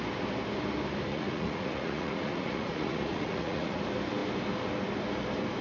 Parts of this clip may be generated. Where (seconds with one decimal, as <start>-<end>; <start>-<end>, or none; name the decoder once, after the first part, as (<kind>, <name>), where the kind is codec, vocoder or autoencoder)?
1.1-3.8 (vocoder, Vocos)